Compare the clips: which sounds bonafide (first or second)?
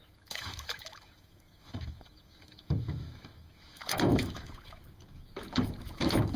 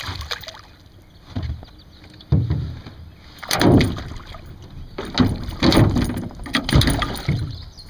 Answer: second